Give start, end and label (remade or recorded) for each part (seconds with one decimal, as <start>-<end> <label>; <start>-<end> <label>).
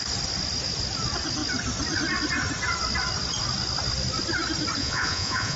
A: 0.0-4.8 recorded; 4.8-5.6 remade